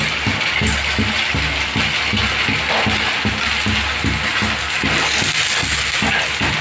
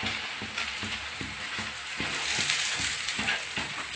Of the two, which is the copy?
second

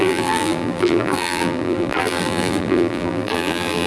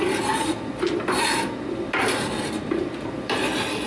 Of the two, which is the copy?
first